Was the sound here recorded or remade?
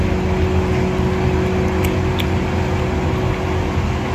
recorded